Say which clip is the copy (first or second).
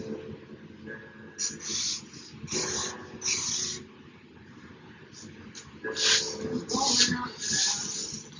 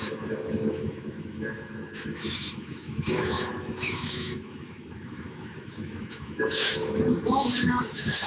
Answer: second